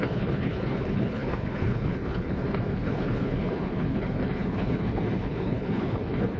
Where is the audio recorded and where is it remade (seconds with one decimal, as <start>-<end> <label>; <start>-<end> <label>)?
0.0-6.4 remade